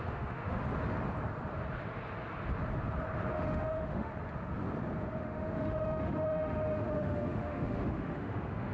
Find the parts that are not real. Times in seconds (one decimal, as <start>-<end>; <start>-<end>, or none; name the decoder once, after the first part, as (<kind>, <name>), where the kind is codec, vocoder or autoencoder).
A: 0.0-0.6 (autoencoder, DAC-VAE); 3.3-4.1; 5.2-8.7